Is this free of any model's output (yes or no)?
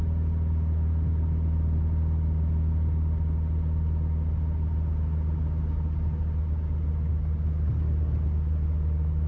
yes